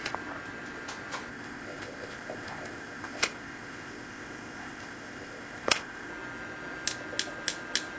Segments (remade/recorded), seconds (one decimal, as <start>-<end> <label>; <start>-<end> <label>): 0.0-1.3 recorded; 1.3-6.1 remade; 6.1-8.0 recorded